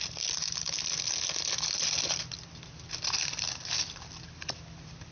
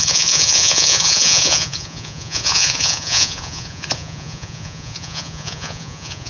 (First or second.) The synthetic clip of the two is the second